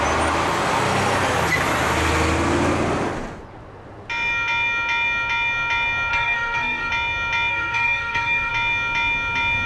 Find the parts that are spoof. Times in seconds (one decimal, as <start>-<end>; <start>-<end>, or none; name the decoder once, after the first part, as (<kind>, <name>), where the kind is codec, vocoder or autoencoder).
6.1-6.9 (codec, SNAC); 7.5-8.5